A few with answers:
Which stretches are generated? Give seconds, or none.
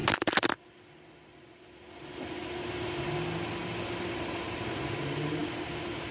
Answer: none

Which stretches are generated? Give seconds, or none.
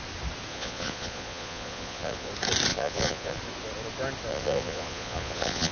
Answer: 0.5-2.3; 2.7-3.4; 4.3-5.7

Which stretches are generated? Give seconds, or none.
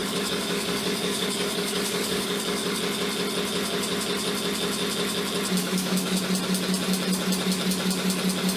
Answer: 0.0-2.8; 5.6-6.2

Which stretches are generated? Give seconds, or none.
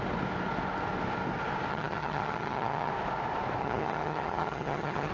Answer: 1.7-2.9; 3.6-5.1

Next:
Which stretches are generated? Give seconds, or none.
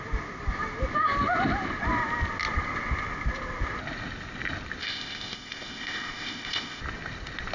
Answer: 4.8-6.8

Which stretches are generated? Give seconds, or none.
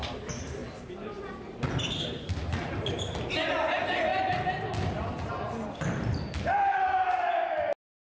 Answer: none